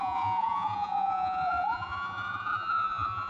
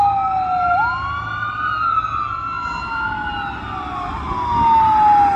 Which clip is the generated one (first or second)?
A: first